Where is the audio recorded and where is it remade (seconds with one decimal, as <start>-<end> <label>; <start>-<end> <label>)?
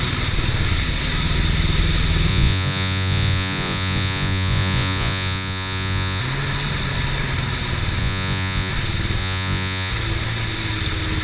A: 0.0-2.3 recorded; 2.3-6.2 remade; 6.2-8.0 recorded; 8.0-8.7 remade; 8.7-9.2 recorded; 9.2-9.9 remade; 9.9-11.2 recorded